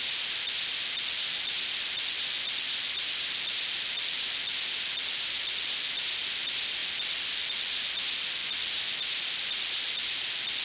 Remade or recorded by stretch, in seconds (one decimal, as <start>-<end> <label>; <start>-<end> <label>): 0.0-10.6 recorded